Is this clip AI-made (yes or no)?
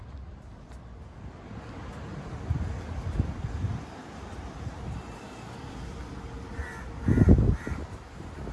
no